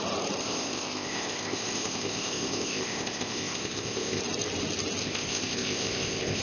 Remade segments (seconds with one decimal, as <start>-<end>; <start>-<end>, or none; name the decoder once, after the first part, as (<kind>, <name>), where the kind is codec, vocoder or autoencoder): 0.4-4.2 (codec, ZipCodec); 5.0-6.4